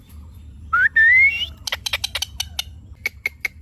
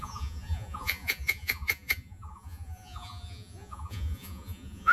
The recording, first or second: first